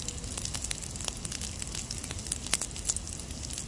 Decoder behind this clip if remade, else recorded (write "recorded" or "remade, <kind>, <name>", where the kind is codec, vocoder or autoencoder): recorded